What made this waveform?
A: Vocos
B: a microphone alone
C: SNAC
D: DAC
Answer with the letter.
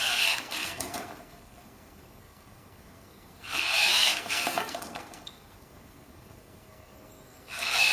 C